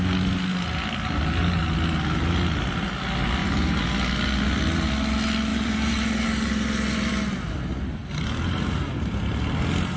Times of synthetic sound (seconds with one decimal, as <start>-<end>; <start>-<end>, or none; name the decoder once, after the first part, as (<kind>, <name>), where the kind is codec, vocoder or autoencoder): 3.4-3.9 (vocoder, BigVGAN v2); 5.5-7.1